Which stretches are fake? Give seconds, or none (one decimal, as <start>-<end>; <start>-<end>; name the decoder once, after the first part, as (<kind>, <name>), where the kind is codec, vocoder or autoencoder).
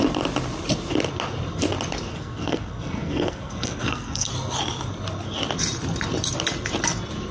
2.1-4.3 (codec, SNAC)